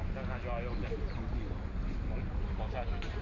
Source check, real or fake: real